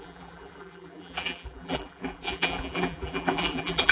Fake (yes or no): yes